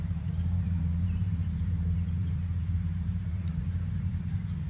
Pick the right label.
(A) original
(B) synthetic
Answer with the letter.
B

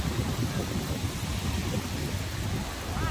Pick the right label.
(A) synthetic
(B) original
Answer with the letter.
B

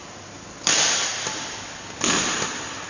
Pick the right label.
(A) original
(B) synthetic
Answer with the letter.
A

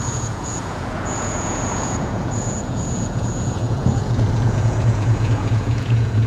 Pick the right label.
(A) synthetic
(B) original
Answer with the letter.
A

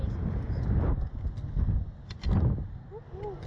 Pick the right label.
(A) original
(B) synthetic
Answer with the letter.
A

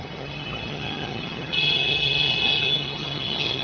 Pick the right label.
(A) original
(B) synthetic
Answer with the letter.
B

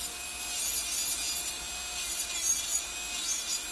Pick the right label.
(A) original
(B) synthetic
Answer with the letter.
A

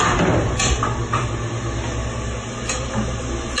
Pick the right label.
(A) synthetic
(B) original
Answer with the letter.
B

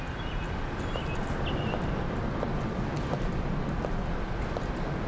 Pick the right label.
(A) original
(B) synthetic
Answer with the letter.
A